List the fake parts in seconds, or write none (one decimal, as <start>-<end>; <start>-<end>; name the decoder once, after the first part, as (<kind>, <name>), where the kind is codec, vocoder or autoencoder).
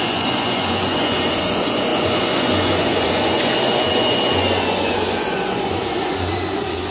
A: 0.0-6.9 (vocoder, Vocos)